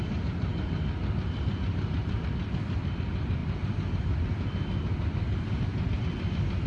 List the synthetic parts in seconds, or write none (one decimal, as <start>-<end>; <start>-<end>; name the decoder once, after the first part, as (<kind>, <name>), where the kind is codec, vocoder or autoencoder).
none